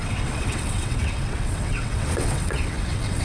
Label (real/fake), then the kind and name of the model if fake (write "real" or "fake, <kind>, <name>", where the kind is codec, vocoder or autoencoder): fake, vocoder, WaveNeXt